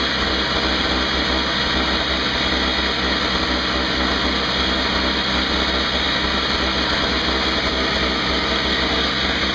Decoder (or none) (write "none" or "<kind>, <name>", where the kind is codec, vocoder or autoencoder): none